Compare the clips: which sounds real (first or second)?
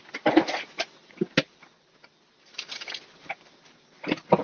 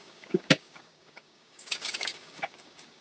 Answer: first